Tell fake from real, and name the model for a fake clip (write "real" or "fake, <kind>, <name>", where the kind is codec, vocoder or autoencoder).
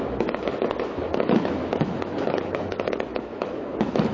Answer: fake, autoencoder, DAC-VAE